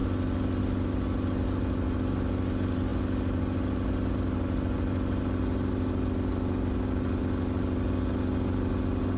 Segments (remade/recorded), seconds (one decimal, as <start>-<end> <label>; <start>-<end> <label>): 0.0-9.2 recorded